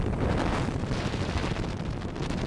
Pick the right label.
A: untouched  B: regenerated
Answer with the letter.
B